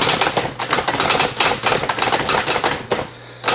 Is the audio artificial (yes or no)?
no